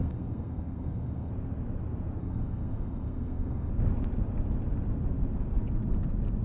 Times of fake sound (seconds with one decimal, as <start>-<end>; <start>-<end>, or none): 0.0-1.3; 2.2-3.7